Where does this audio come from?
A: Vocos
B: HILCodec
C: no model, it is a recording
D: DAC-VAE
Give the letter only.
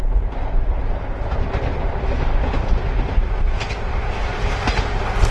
C